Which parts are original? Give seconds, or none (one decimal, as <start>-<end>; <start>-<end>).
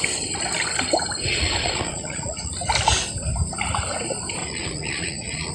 0.0-1.3; 2.5-4.4